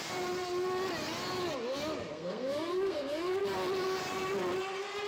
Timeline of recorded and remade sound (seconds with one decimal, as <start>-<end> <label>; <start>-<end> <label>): 0.0-2.1 recorded; 2.1-3.4 remade; 3.4-5.1 recorded

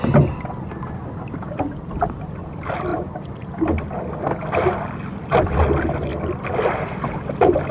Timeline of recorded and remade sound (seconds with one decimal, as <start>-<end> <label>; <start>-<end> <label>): 0.0-7.7 recorded

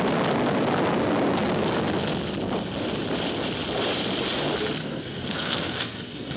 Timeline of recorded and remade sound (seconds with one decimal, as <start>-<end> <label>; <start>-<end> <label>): 0.0-4.8 recorded; 4.8-6.4 remade

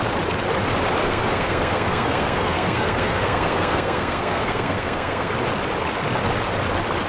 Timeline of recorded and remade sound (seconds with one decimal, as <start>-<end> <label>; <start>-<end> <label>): 0.0-1.0 recorded; 1.0-5.3 remade; 5.3-7.1 recorded

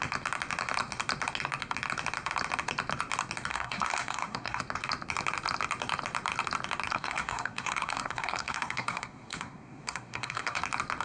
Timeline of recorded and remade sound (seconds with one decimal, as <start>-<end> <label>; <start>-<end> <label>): 0.0-3.5 recorded; 3.5-4.6 remade; 4.6-6.9 recorded; 6.9-10.6 remade; 10.6-11.0 recorded

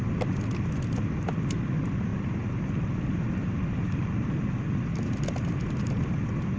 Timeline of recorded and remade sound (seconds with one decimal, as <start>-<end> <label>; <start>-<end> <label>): 0.0-6.6 recorded